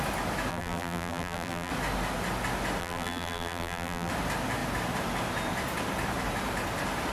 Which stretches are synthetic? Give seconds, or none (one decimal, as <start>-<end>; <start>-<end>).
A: 0.5-1.7; 2.8-4.1